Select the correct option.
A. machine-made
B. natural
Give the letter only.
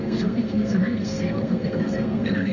A